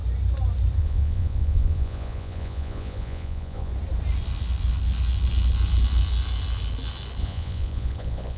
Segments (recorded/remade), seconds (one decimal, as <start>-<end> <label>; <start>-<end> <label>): 0.0-0.8 recorded; 0.8-3.7 remade; 3.7-7.2 recorded; 7.2-8.4 remade